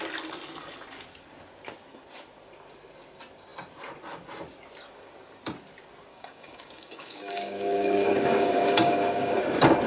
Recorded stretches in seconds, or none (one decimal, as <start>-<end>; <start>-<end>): 0.0-6.1; 9.4-9.9